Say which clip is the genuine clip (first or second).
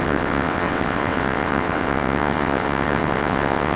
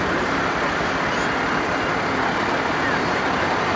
second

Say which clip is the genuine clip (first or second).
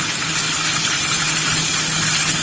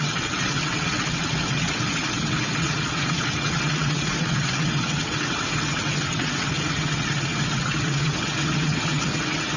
first